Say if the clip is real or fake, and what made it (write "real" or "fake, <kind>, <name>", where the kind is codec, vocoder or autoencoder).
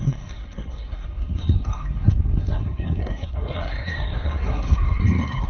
fake, codec, SNAC